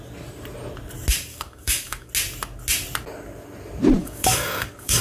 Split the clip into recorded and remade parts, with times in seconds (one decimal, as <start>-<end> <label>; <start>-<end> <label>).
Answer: 0.0-1.3 recorded; 1.3-2.1 remade; 2.1-4.0 recorded; 4.0-5.0 remade